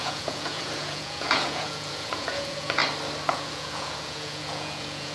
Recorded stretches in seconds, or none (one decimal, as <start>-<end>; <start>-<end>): 2.8-3.3